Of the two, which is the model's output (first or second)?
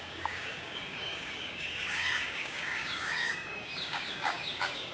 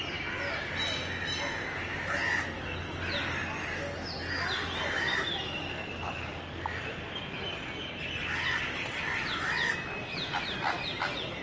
first